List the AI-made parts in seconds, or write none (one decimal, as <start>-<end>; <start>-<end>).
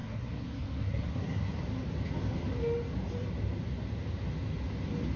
0.0-1.6